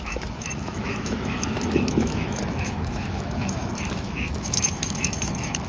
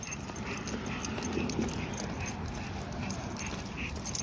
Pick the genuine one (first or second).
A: second